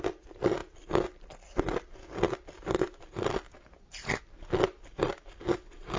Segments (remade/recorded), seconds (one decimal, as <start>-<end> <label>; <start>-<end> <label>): 0.0-6.0 recorded